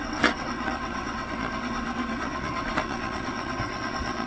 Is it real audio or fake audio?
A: fake